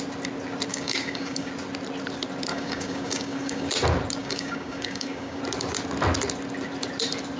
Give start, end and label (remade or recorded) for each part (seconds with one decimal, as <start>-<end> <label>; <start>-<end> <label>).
0.0-0.7 recorded; 0.7-1.5 remade; 1.5-2.5 recorded; 2.5-3.7 remade; 3.7-4.2 recorded; 4.2-5.4 remade; 5.4-7.4 recorded